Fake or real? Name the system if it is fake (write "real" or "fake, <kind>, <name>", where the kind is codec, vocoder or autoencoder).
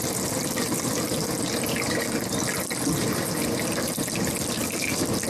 real